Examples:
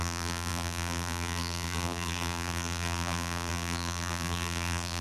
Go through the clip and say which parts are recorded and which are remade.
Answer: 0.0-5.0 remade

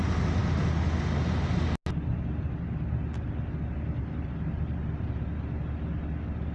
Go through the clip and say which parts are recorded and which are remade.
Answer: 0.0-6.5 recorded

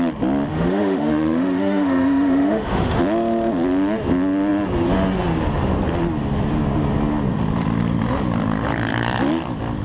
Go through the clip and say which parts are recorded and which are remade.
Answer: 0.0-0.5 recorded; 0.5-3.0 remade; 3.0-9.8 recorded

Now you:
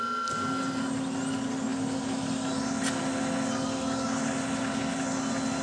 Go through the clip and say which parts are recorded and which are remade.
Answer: 0.0-5.6 recorded

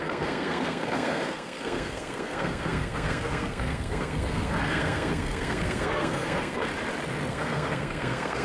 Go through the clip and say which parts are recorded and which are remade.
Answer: 0.0-6.7 remade; 6.7-7.3 recorded; 7.3-8.4 remade